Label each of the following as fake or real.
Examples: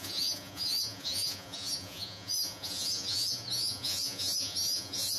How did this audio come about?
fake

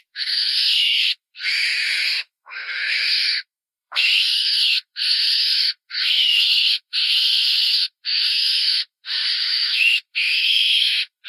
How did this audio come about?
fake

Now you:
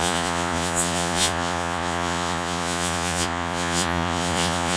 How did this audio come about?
fake